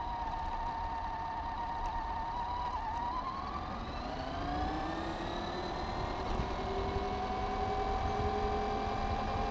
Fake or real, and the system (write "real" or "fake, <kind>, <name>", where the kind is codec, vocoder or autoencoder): real